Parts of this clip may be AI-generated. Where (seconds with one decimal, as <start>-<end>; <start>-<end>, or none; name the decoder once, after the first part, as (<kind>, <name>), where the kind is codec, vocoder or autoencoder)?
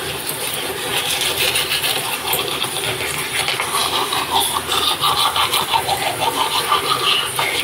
0.9-3.0 (vocoder, BigVGAN v2); 3.8-5.1